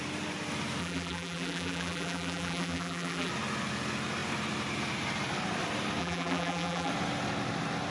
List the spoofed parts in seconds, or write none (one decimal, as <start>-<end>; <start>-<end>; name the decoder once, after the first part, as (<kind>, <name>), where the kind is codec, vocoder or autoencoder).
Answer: 0.8-3.3 (vocoder, BigVGAN v2); 6.0-6.9